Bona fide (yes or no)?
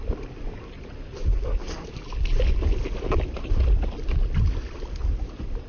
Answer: yes